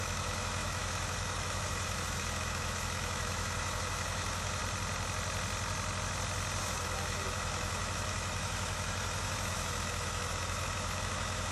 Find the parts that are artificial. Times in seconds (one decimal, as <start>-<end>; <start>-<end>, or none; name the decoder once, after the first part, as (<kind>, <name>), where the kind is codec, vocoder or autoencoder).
0.0-4.6 (autoencoder, DAC-VAE); 6.6-11.5